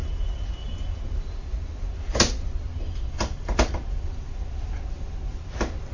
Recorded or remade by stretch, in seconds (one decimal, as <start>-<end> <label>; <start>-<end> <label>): 0.0-5.9 recorded